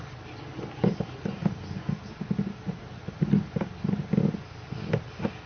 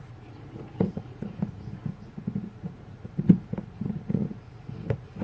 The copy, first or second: second